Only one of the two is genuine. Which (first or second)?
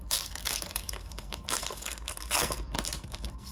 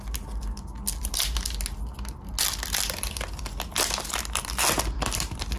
second